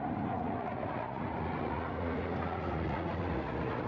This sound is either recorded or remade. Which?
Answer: remade